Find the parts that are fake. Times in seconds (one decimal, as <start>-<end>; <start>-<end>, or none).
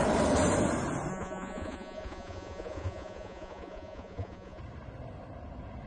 1.1-4.6